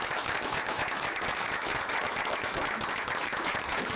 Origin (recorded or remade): remade